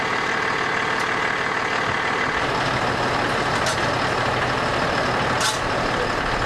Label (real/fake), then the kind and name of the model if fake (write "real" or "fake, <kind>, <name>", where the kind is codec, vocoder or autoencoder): real